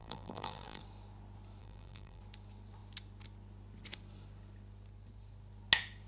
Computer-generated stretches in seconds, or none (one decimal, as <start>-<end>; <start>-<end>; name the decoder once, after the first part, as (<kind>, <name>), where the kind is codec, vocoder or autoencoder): 0.0-0.8 (vocoder, BigVGAN v2); 1.6-2.2